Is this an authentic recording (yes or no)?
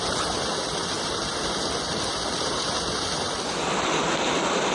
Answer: yes